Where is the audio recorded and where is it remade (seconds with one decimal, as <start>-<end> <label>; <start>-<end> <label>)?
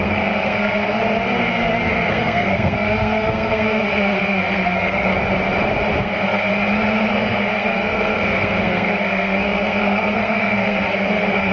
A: 0.0-1.0 remade; 1.0-1.9 recorded; 1.9-5.1 remade; 5.1-6.0 recorded; 6.0-6.5 remade; 6.5-7.1 recorded; 7.1-11.5 remade